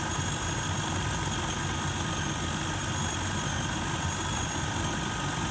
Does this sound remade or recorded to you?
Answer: recorded